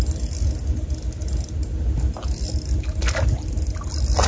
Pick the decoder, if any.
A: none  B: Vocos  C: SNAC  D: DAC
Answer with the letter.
A